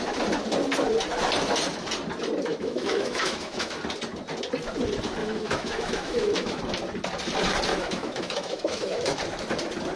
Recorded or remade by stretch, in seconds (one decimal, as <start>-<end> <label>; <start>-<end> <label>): 0.0-2.5 recorded; 2.5-3.8 remade; 3.8-5.2 recorded; 5.2-6.6 remade; 6.6-7.7 recorded; 7.7-9.2 remade; 9.2-10.0 recorded